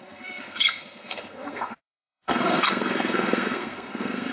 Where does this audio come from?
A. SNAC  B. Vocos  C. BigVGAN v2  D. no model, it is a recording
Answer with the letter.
A